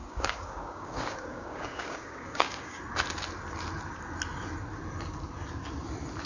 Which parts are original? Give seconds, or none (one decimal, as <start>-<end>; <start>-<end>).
2.8-6.3